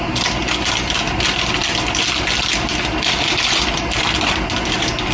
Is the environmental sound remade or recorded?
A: recorded